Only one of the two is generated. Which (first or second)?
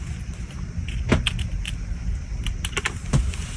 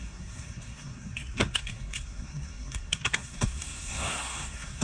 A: second